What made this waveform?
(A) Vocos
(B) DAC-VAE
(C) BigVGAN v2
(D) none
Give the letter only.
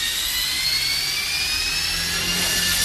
D